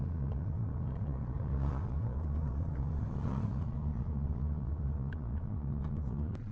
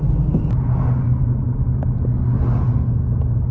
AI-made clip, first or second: first